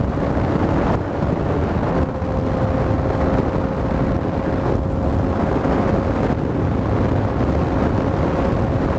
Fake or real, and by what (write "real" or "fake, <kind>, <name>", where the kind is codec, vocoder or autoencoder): real